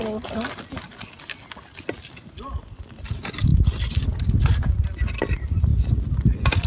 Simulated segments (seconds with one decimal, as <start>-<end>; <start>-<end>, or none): none